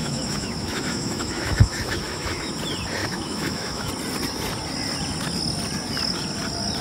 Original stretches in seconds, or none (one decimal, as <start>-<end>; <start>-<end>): 2.5-3.0; 3.9-6.8